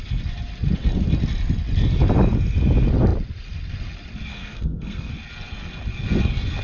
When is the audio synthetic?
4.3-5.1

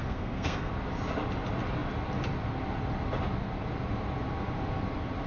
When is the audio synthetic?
0.0-0.7

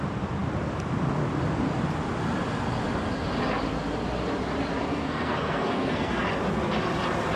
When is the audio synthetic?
4.9-6.2

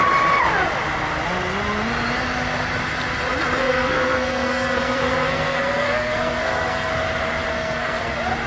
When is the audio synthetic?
3.6-6.9; 7.5-8.1

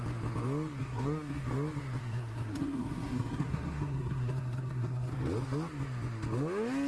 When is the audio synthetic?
0.8-1.5; 2.0-5.1